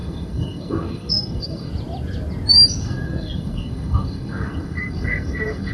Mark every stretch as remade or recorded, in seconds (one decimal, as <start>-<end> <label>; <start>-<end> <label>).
0.0-1.7 remade; 1.7-2.8 recorded; 2.8-5.7 remade